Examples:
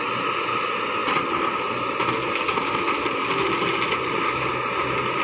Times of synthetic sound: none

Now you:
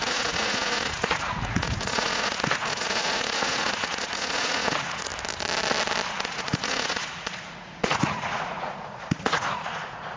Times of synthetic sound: 0.0-5.1 (vocoder, Vocos); 6.1-10.2

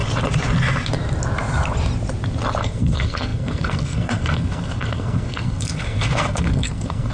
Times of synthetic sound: 2.6-7.1 (codec, SNAC)

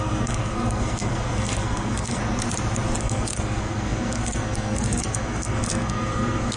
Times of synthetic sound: 0.0-2.2 (codec, SNAC); 3.0-6.6